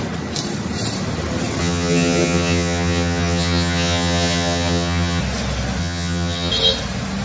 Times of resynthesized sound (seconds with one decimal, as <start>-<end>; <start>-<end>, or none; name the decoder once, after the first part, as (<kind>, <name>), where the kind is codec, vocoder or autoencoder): 1.6-5.2 (vocoder, HiFi-GAN); 5.8-6.5